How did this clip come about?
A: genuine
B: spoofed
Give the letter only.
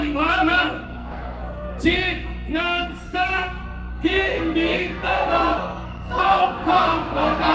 B